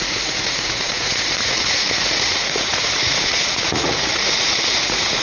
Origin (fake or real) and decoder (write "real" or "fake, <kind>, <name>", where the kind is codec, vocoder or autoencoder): fake, vocoder, Vocos